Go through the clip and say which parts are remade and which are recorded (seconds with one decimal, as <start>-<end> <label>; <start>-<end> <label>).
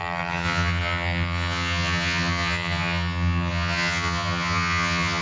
0.0-5.2 remade